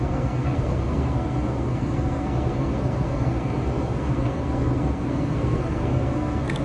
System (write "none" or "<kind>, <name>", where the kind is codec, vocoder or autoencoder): codec, SNAC